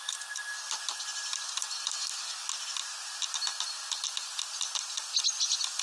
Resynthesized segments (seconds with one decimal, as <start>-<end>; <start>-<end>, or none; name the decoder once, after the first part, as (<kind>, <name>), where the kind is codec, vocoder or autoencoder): none